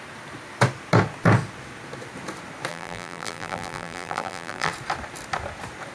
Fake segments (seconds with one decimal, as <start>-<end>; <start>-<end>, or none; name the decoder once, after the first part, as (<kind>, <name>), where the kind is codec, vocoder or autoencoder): 2.7-4.7 (vocoder, BigVGAN v2)